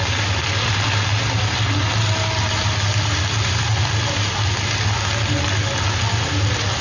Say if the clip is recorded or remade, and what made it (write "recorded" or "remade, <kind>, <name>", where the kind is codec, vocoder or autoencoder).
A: recorded